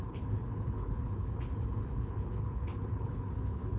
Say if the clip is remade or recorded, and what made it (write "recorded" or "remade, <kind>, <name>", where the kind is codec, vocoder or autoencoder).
remade, codec, HILCodec